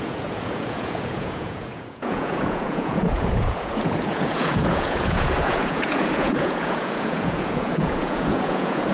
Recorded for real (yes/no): no